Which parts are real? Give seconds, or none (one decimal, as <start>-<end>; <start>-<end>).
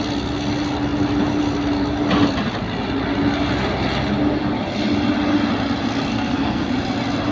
0.0-6.1; 6.7-7.3